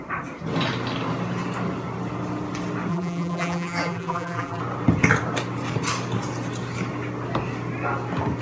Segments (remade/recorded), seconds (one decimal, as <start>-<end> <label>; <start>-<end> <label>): 0.0-2.9 recorded; 2.9-4.6 remade; 4.6-8.4 recorded